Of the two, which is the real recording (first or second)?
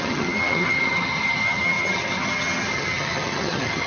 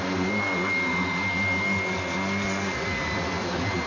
second